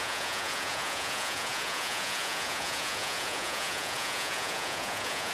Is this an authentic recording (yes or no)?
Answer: no